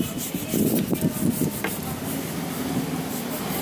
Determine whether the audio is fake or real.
real